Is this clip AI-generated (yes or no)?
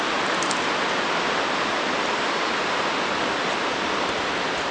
no